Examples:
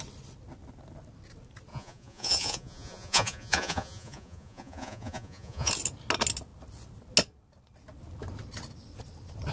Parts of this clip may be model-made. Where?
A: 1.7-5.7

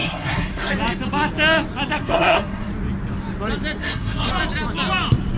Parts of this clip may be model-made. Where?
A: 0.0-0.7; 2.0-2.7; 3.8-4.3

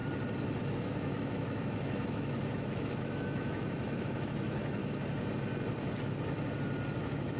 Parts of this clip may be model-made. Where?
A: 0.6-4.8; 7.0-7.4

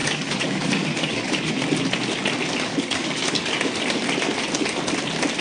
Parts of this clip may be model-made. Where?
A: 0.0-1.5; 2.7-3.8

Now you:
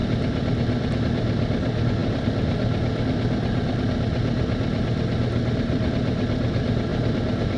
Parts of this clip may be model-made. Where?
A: none

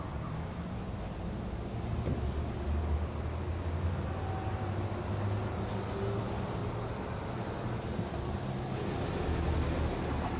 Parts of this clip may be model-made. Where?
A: none

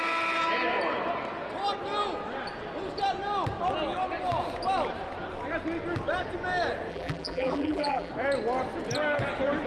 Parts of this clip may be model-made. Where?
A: 6.9-8.1